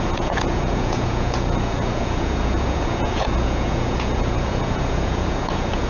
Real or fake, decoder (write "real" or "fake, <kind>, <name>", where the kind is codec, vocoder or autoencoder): fake, vocoder, Vocos